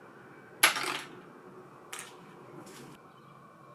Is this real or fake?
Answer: real